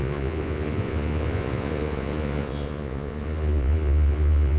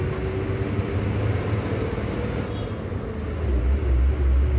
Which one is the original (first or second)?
second